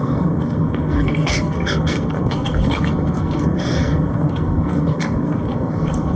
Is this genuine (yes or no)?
no